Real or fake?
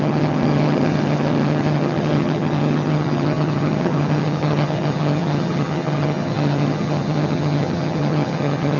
fake